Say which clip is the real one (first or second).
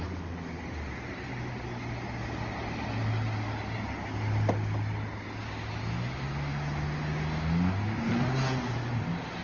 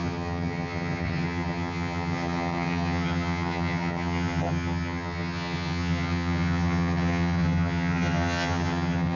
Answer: first